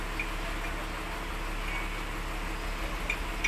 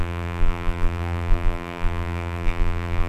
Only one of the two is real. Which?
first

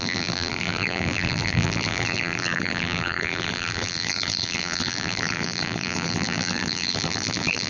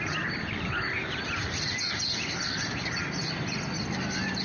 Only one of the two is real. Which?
second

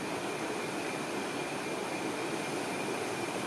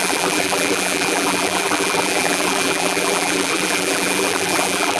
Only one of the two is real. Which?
first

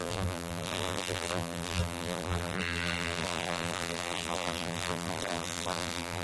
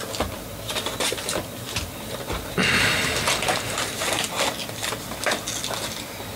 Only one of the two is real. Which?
second